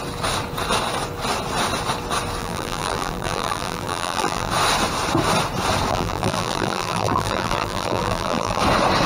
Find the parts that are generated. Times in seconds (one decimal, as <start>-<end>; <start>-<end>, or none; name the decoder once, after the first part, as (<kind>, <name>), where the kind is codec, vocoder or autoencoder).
2.4-4.5 (vocoder, BigVGAN v2); 5.9-8.6